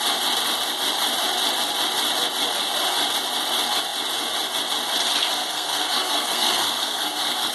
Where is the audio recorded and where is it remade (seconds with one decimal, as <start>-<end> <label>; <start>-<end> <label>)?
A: 0.0-5.4 recorded; 5.4-7.5 remade